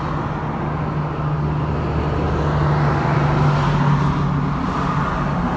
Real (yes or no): yes